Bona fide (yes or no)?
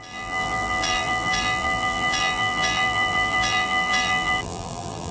no